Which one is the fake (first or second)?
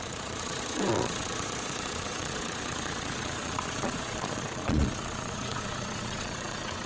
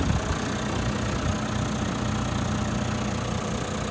first